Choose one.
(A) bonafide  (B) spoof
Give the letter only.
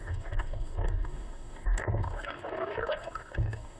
B